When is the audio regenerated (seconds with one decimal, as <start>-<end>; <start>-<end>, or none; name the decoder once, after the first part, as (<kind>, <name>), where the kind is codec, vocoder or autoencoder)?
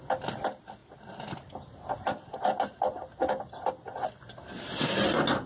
none